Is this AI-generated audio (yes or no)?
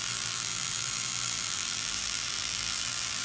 yes